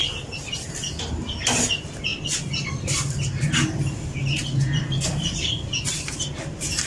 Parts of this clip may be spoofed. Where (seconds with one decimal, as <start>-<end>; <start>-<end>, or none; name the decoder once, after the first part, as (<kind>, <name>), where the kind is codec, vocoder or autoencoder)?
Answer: none